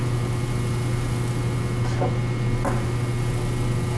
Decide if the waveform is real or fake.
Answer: real